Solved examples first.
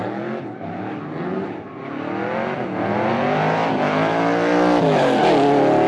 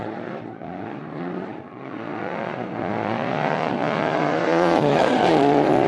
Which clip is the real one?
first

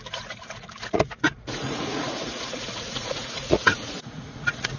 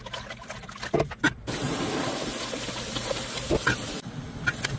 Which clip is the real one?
second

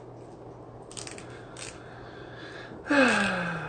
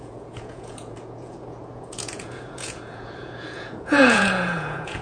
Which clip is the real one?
first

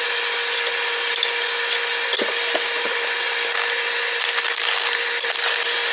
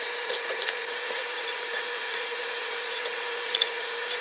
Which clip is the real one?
first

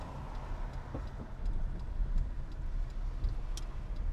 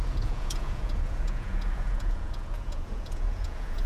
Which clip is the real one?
first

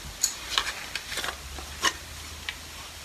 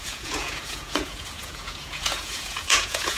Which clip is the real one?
first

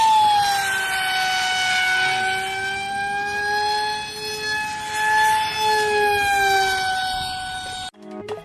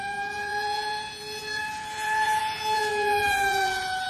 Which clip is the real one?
first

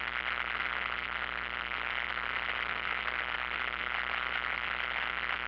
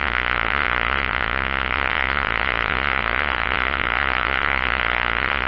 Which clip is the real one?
first